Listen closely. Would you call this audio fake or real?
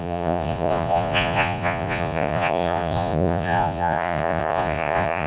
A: fake